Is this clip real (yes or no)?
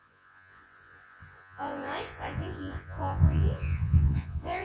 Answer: no